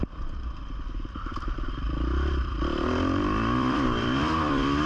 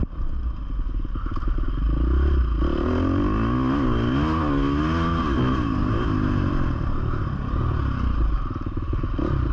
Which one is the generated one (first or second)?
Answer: first